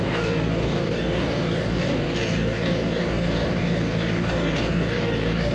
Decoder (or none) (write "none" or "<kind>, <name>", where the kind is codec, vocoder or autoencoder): codec, DAC